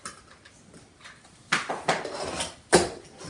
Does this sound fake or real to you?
real